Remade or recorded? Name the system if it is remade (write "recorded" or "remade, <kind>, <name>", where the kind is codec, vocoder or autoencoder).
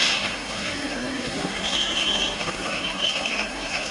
remade, codec, SNAC